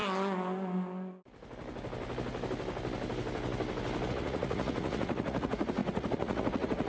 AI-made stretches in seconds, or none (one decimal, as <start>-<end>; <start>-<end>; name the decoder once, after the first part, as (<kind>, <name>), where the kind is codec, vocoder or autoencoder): 4.1-6.9 (vocoder, Vocos)